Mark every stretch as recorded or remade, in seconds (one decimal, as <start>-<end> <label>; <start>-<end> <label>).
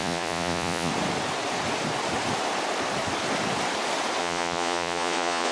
0.0-0.9 remade; 0.9-4.2 recorded; 4.2-5.5 remade